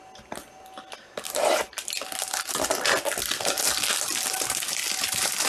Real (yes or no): yes